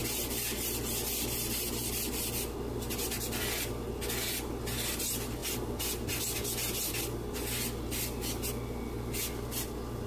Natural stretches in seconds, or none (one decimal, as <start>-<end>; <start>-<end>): 0.0-10.1